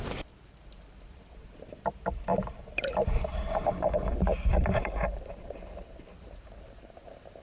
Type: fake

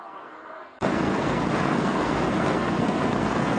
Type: fake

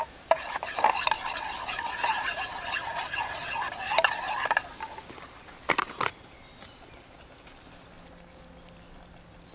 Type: real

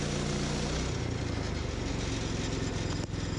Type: real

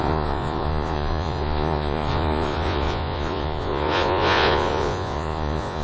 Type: fake